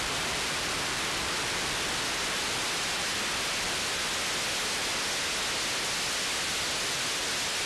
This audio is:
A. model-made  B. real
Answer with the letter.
B